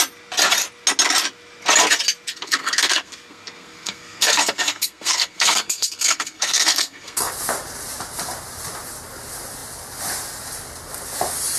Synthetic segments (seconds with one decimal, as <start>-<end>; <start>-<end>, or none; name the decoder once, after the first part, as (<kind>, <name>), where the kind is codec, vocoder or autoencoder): 2.3-7.3 (codec, SNAC)